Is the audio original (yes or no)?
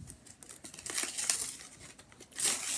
yes